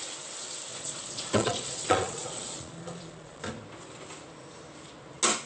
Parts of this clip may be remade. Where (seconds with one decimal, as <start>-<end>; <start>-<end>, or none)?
0.7-3.4